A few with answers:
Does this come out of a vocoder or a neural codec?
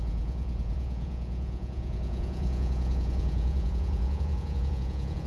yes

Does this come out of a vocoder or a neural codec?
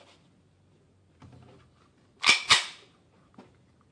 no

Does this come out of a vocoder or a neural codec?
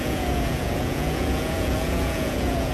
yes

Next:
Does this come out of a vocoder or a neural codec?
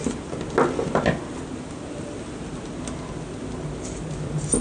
no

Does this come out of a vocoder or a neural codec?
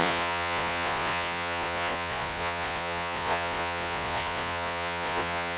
yes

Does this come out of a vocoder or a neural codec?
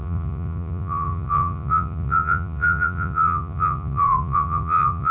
yes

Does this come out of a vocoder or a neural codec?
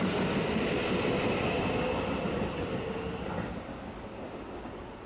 no